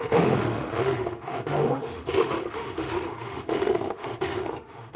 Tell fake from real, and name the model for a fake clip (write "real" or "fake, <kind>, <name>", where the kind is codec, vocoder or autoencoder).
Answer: fake, autoencoder, DAC-VAE